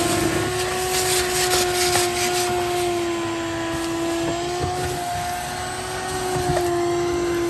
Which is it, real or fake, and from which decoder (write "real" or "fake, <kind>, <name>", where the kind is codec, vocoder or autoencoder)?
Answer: real